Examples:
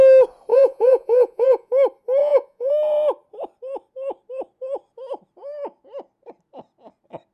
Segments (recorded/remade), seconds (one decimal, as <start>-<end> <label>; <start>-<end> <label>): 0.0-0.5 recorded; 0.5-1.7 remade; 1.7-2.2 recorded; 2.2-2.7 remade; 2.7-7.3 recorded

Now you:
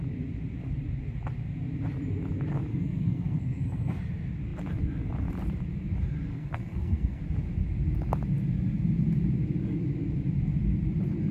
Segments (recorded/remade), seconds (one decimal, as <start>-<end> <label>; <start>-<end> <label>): 0.0-2.7 recorded; 2.7-4.0 remade; 4.0-6.3 recorded; 6.3-7.2 remade; 7.2-11.3 recorded

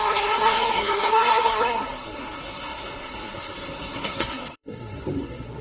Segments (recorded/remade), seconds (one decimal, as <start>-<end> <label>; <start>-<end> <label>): 0.0-5.6 remade

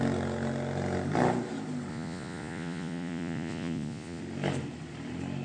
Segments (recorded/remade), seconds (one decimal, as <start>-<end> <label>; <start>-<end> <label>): 0.0-1.9 recorded; 1.9-4.2 remade; 4.2-5.4 recorded